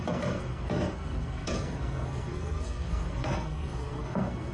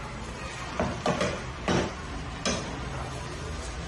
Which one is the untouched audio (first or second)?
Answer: second